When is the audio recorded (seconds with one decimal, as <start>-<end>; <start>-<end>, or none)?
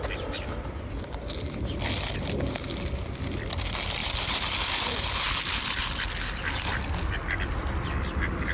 0.0-4.0; 5.8-8.5